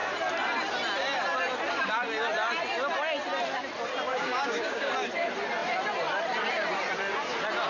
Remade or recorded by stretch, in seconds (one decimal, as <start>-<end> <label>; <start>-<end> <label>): 0.0-4.1 recorded; 4.1-4.9 remade; 4.9-7.7 recorded